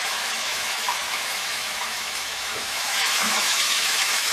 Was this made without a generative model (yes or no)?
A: no